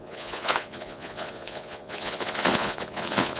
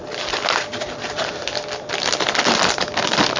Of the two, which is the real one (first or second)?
second